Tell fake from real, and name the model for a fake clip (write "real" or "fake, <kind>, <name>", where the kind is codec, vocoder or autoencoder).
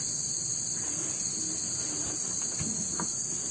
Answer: real